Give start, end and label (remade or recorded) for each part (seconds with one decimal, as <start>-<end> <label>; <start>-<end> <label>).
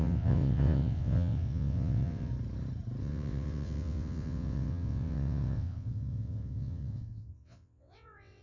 0.0-2.3 remade; 2.3-3.0 recorded; 3.0-8.4 remade